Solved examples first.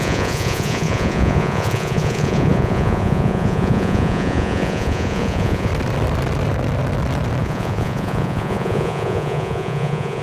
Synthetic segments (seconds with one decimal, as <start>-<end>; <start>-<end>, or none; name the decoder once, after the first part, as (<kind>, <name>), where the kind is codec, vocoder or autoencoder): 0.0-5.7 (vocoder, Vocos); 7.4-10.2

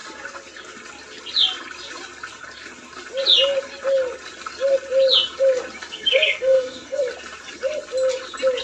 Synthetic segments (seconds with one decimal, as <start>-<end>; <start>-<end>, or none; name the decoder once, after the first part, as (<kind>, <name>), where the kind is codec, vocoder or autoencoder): 5.8-7.0 (codec, SNAC)

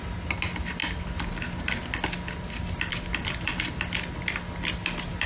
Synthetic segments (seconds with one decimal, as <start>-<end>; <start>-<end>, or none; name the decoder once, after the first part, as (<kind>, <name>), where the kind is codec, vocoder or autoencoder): none